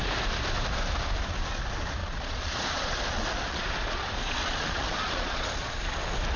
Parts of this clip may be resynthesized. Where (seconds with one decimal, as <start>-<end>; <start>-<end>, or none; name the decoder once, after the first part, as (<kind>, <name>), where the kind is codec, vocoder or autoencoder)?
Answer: 2.0-5.8 (vocoder, Vocos)